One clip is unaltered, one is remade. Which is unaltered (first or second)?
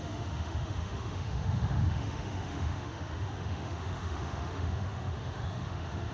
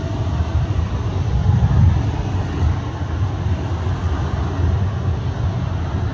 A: second